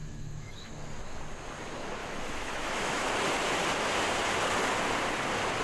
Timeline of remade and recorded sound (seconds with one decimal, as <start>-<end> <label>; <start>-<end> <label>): 0.0-0.7 remade; 0.7-2.0 recorded; 2.0-3.1 remade; 3.1-5.6 recorded